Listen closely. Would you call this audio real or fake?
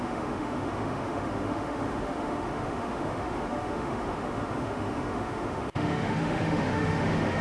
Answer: fake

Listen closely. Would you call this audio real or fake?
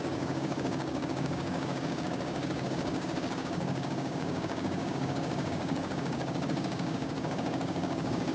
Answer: fake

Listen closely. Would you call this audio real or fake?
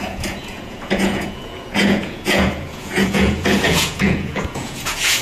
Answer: fake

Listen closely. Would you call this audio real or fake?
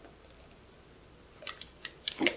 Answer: fake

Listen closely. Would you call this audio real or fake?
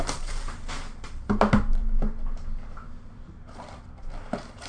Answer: real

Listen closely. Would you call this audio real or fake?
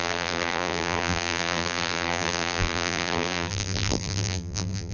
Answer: fake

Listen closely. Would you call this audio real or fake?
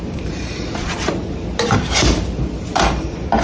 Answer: fake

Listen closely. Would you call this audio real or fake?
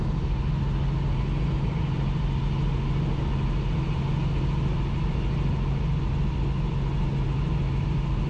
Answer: real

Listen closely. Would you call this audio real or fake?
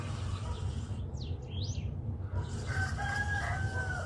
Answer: real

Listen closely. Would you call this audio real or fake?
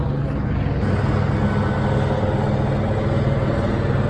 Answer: real